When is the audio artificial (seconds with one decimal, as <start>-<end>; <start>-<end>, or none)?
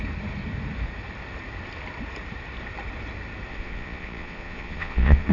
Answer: 3.5-5.3